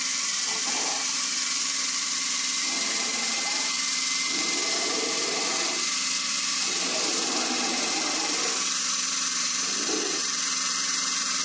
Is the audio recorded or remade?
remade